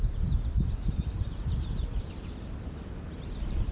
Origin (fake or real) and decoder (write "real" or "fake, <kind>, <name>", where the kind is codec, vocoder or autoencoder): real